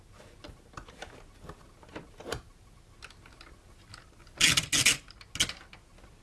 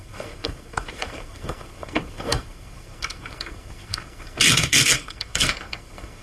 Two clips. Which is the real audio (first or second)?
first